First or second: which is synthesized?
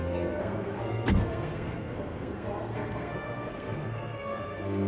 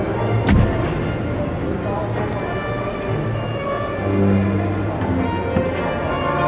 first